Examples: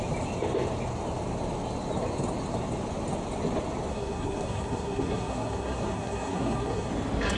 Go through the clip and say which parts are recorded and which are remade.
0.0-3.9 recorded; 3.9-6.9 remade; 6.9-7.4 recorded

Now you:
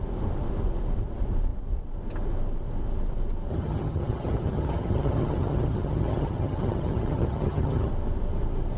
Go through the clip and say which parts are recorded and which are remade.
0.0-3.5 recorded; 3.5-7.9 remade; 7.9-8.8 recorded

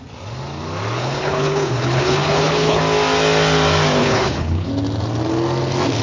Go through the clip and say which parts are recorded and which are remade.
0.0-1.0 recorded; 1.0-2.8 remade; 2.8-4.0 recorded; 4.0-4.7 remade; 4.7-6.0 recorded

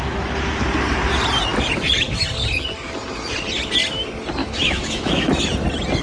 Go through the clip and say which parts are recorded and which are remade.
0.0-4.4 recorded; 4.4-5.4 remade; 5.4-6.0 recorded

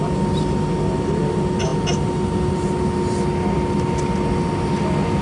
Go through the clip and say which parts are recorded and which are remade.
0.0-5.2 recorded

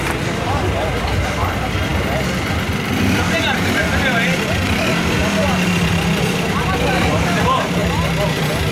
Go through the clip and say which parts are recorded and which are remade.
0.0-5.2 remade; 5.2-5.9 recorded; 5.9-7.8 remade; 7.8-8.7 recorded